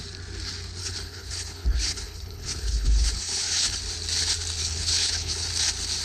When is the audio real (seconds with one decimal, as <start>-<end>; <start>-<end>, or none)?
0.0-0.8; 3.8-4.6; 5.5-6.0